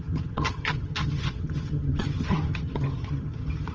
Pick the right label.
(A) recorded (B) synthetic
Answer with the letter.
B